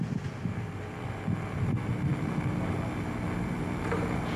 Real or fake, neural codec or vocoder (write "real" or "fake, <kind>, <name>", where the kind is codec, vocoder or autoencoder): real